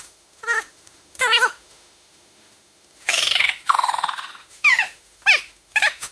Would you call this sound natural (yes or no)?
no